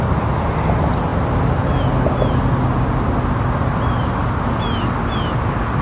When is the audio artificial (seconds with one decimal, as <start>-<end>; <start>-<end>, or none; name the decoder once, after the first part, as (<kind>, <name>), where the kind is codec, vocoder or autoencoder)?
none